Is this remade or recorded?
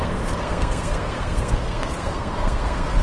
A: remade